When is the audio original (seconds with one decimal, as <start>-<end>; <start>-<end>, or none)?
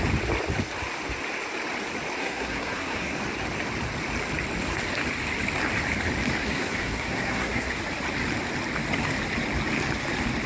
0.0-2.2; 3.2-6.4; 7.8-10.5